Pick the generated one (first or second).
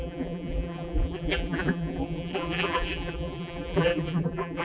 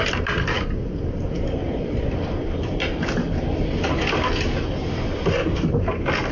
first